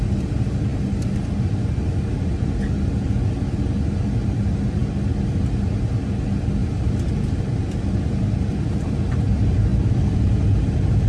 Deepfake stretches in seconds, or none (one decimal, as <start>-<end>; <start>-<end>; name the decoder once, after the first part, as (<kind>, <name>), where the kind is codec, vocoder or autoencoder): 6.6-9.0 (vocoder, BigVGAN v2); 9.7-10.3